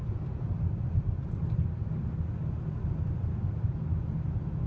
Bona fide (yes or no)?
yes